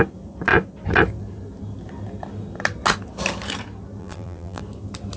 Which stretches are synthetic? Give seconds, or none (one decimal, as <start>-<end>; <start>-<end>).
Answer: 4.0-4.6